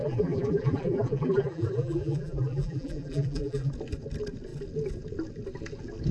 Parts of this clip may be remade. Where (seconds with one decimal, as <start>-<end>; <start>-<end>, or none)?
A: 0.0-3.7